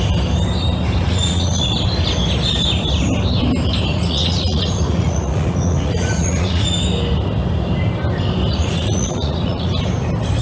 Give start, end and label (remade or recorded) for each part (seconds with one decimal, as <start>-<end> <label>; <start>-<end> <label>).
0.0-1.0 recorded; 1.0-1.6 remade; 1.6-3.9 recorded; 3.9-6.8 remade; 6.8-8.5 recorded; 8.5-9.7 remade; 9.7-10.4 recorded